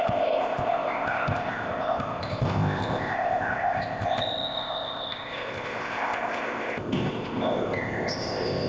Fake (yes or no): yes